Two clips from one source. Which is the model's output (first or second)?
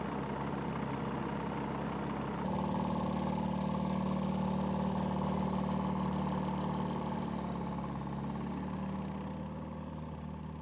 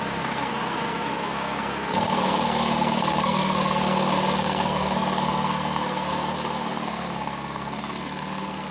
second